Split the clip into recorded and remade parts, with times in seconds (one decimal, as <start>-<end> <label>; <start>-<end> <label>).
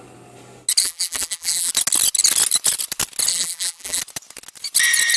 0.0-0.8 recorded; 0.8-1.7 remade; 1.7-3.3 recorded; 3.3-4.0 remade; 4.0-5.2 recorded